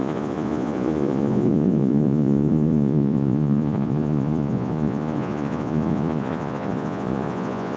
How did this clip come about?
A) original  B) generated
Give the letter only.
B